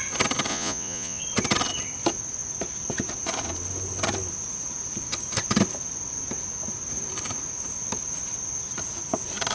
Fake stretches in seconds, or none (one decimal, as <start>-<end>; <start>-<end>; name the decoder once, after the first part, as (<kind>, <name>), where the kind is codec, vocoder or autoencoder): 0.5-1.2 (vocoder, Vocos)